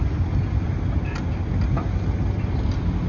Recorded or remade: recorded